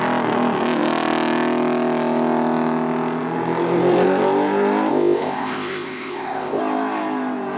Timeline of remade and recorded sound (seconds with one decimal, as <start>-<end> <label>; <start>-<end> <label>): 0.0-4.9 recorded; 4.9-6.6 remade; 6.6-7.6 recorded